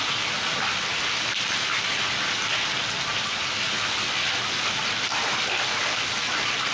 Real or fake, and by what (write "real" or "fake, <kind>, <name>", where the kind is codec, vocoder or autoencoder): real